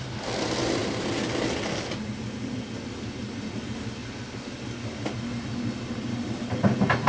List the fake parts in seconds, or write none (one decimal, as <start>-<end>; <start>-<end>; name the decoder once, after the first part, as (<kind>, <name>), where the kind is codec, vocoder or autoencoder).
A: none